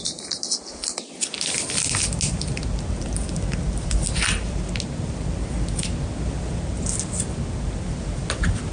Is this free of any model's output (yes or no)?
yes